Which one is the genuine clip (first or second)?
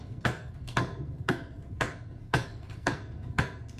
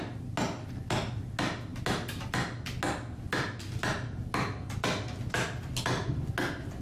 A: second